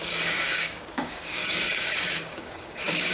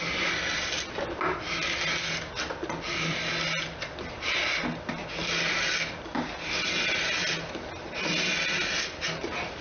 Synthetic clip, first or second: first